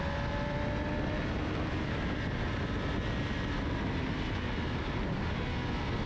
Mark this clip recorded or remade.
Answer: recorded